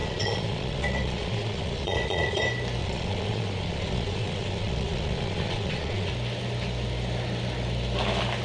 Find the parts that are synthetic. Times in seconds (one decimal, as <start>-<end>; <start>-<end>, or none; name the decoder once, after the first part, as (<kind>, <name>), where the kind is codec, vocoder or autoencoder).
0.0-2.4 (vocoder, Vocos); 2.8-6.1